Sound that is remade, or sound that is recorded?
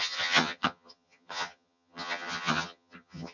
remade